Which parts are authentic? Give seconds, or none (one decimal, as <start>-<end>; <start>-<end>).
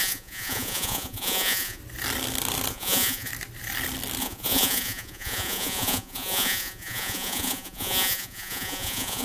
1.8-2.7; 3.3-4.2